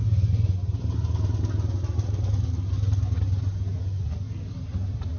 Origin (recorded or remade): recorded